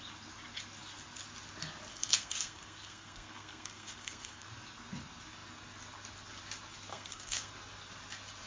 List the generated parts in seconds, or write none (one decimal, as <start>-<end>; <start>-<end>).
1.9-4.5; 6.9-7.5